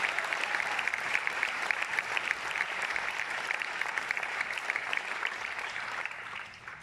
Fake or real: fake